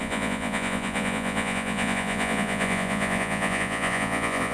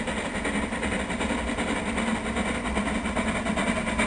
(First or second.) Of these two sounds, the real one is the second